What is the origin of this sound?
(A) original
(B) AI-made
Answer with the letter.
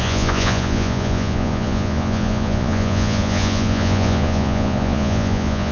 B